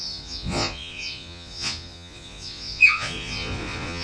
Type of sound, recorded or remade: remade